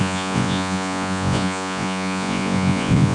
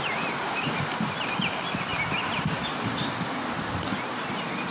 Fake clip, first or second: first